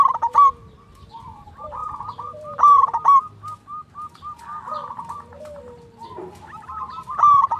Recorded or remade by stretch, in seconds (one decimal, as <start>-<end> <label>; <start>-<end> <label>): 0.0-7.6 recorded